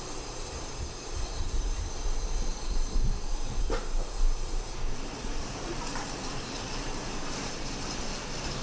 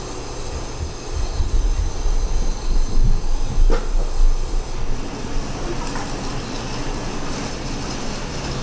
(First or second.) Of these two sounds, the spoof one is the first